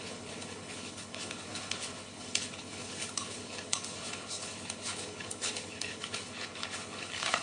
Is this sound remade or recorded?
remade